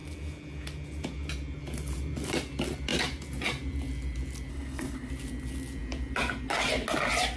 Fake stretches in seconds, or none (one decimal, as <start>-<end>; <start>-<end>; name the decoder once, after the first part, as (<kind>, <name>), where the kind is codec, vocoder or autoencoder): 4.5-5.1 (codec, HILCodec)